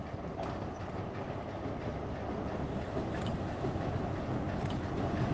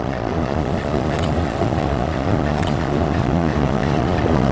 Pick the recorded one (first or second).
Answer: first